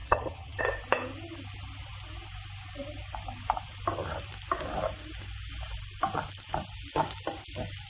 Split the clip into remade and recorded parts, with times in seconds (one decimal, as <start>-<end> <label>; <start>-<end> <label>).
0.0-0.6 remade; 0.6-7.9 recorded